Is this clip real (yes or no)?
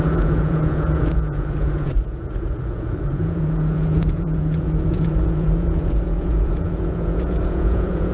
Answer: no